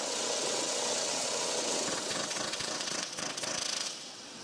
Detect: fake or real fake